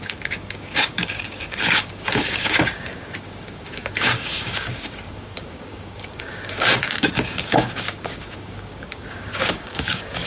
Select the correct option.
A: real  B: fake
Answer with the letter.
B